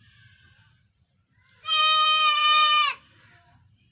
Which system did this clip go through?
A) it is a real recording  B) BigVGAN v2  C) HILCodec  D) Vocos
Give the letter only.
B